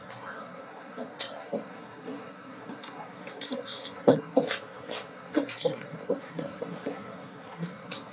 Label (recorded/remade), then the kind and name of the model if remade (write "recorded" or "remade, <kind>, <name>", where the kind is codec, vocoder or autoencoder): remade, codec, SNAC